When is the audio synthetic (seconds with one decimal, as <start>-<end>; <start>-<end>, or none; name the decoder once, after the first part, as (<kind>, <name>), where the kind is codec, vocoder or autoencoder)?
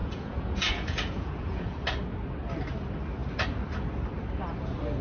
0.0-1.7 (vocoder, Vocos)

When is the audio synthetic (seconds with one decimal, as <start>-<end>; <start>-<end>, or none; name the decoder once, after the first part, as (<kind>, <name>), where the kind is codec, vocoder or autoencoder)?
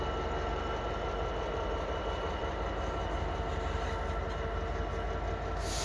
none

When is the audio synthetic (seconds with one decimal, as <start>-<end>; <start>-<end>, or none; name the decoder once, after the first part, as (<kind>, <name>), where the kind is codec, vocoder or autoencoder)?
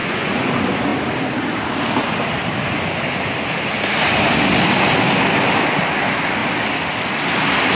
0.0-0.5 (vocoder, Vocos)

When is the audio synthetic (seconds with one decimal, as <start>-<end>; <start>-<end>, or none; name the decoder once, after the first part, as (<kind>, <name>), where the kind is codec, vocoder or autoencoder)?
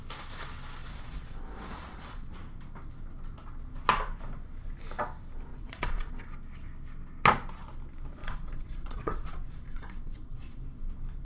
0.8-2.3 (vocoder, Vocos); 5.5-6.1; 8.2-10.6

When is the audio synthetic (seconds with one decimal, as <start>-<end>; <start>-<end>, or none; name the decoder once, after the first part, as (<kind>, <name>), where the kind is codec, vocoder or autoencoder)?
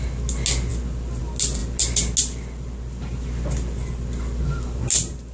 none